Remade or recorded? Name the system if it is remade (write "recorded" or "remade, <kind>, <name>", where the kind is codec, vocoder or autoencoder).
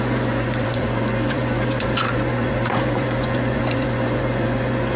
remade, vocoder, Vocos